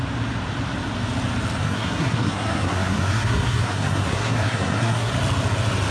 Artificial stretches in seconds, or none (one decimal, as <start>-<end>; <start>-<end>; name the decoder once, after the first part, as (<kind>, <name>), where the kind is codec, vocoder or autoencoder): 1.6-5.1 (codec, SNAC)